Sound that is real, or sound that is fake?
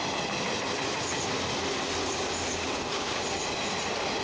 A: real